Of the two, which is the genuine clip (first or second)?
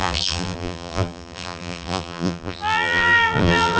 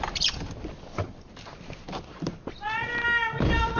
second